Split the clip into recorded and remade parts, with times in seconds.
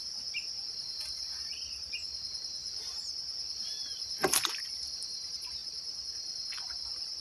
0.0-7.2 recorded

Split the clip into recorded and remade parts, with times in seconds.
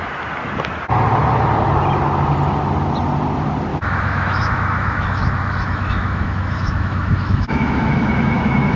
0.0-3.7 recorded; 3.7-8.8 remade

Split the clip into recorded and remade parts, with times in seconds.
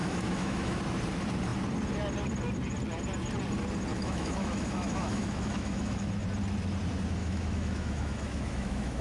0.0-0.8 remade; 0.8-3.9 recorded; 3.9-6.1 remade; 6.1-7.2 recorded; 7.2-9.0 remade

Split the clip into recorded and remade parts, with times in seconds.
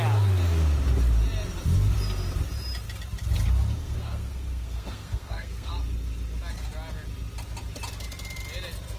0.0-3.8 recorded; 3.8-5.7 remade; 5.7-9.0 recorded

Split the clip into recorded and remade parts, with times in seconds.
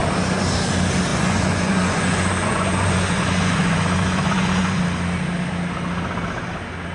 0.0-1.1 recorded; 1.1-4.8 remade; 4.8-6.9 recorded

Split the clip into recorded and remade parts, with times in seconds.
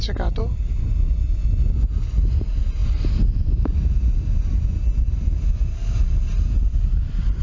0.0-7.4 recorded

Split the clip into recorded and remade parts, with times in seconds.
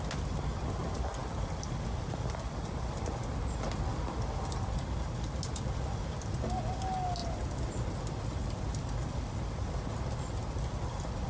0.0-11.3 recorded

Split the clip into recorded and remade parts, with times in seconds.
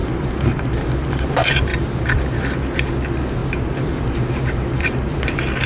0.0-0.8 remade; 0.8-1.7 recorded; 1.7-2.4 remade; 2.4-3.4 recorded; 3.4-5.2 remade; 5.2-5.7 recorded